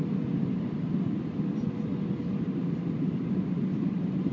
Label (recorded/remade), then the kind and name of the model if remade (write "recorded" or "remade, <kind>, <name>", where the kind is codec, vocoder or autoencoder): recorded